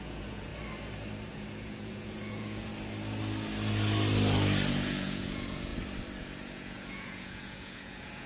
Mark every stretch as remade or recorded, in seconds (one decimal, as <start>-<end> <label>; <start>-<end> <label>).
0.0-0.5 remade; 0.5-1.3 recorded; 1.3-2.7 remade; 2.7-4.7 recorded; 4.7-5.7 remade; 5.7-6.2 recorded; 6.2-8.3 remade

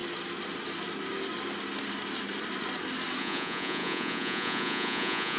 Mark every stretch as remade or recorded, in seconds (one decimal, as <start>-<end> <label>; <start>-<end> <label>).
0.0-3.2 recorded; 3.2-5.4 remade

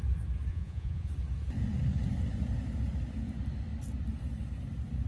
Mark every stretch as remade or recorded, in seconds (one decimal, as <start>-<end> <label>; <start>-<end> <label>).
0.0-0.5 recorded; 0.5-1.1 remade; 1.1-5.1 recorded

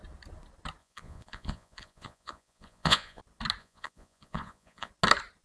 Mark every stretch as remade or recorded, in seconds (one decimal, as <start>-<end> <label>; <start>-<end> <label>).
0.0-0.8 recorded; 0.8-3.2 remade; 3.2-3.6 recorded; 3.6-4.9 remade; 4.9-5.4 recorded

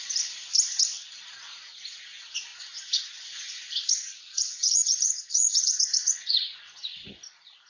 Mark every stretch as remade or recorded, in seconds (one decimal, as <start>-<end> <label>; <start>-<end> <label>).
0.0-2.5 recorded; 2.5-7.1 remade; 7.1-7.7 recorded